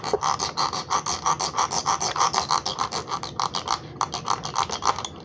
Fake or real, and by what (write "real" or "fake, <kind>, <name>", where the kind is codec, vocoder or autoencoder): real